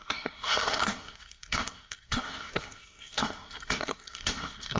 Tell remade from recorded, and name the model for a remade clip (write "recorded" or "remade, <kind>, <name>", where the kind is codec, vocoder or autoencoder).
remade, codec, SNAC